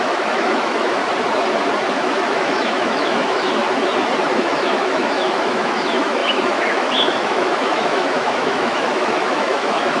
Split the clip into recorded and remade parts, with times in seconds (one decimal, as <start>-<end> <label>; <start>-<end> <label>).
0.0-1.0 remade; 1.0-1.9 recorded; 1.9-3.6 remade; 3.6-4.3 recorded; 4.3-10.0 remade